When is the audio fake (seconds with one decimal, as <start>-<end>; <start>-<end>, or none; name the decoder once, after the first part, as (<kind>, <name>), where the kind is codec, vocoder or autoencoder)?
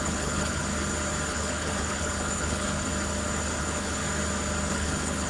0.0-0.6 (codec, HILCodec); 1.3-2.9; 3.6-4.0; 4.7-5.3